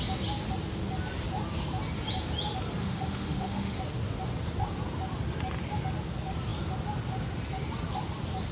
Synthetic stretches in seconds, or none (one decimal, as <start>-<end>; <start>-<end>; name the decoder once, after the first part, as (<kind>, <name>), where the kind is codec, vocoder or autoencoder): 2.8-3.8 (autoencoder, DAC-VAE)